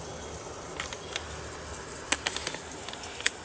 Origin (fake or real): real